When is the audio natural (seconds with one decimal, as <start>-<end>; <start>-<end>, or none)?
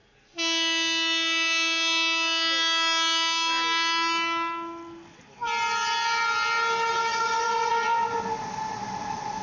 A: 0.0-7.1; 7.7-9.4